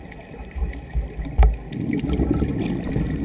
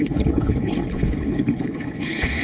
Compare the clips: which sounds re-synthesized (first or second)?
second